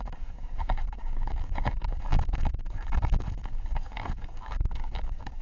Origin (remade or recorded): remade